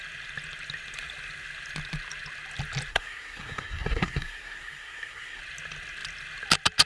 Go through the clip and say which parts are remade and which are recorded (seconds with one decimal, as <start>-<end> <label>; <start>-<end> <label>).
0.0-2.9 recorded; 2.9-5.4 remade; 5.4-6.9 recorded

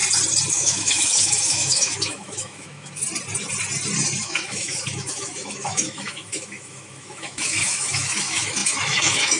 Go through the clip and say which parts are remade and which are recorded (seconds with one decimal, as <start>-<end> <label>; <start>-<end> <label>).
0.0-0.5 recorded; 0.5-3.0 remade; 3.0-4.2 recorded; 4.2-9.4 remade

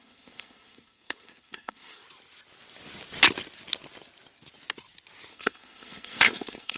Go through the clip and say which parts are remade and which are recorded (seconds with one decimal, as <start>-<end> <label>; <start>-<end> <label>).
0.0-2.0 remade; 2.0-5.3 recorded; 5.3-6.8 remade

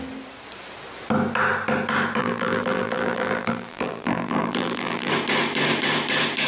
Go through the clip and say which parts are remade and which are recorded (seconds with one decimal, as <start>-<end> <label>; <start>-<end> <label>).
0.0-2.2 recorded; 2.2-5.1 remade; 5.1-6.5 recorded

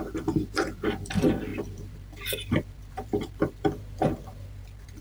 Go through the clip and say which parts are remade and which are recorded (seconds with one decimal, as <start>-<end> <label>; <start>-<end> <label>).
0.0-5.0 remade

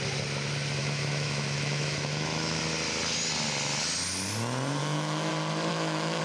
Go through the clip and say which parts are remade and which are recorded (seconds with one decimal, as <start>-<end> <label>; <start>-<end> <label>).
0.0-0.8 recorded; 0.8-2.6 remade; 2.6-4.8 recorded; 4.8-5.3 remade; 5.3-5.7 recorded; 5.7-6.2 remade

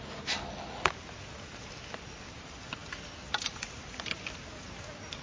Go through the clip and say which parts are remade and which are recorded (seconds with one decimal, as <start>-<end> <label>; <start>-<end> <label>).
0.0-5.2 recorded